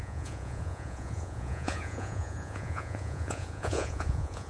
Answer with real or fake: fake